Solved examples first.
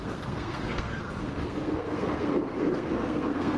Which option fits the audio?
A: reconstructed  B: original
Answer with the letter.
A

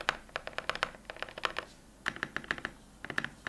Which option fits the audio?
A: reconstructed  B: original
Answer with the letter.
B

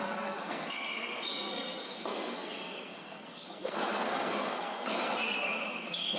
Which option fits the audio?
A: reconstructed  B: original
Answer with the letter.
A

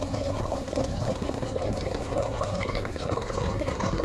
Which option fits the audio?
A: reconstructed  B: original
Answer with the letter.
A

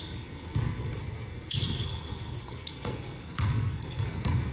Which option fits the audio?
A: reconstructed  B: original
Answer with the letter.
A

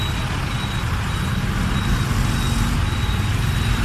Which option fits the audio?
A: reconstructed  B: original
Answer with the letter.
B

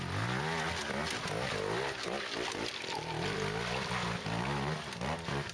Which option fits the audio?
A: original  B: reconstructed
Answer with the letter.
A